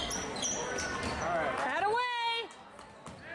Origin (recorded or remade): recorded